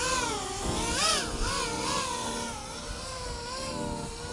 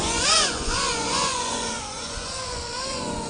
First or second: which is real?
first